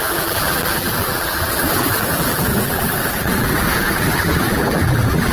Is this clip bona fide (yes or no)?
no